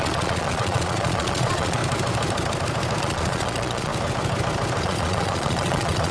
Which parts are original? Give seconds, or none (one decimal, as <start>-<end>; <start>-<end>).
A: 1.8-3.0; 3.9-4.8